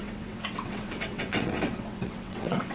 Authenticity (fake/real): fake